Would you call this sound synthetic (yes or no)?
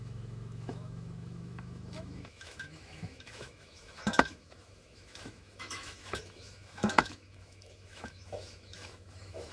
yes